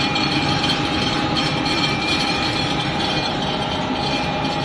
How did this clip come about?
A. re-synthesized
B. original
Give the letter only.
A